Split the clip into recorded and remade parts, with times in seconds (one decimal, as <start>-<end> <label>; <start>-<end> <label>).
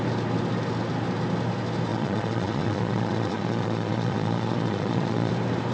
0.0-1.9 recorded; 1.9-5.3 remade; 5.3-5.7 recorded